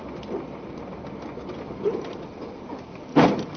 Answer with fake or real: real